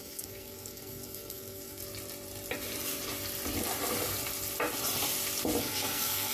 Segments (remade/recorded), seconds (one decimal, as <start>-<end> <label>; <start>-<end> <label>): 0.0-1.8 remade; 1.8-5.6 recorded; 5.6-6.3 remade